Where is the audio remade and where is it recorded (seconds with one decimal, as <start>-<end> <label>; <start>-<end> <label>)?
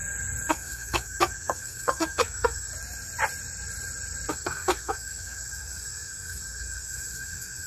0.0-0.5 recorded; 0.5-2.7 remade; 2.7-4.3 recorded; 4.3-7.7 remade